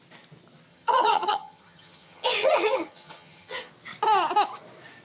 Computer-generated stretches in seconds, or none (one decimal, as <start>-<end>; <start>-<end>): 0.7-3.7